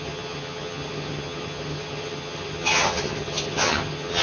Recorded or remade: remade